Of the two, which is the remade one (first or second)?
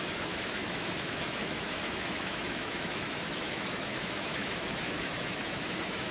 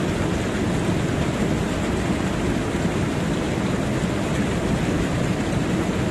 first